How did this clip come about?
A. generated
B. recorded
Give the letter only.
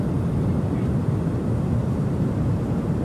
A